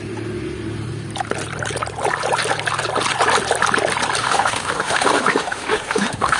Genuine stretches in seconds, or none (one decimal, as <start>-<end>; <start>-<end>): 0.0-4.2